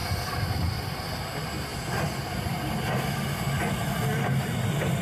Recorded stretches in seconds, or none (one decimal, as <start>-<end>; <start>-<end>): 0.0-1.7; 3.9-5.0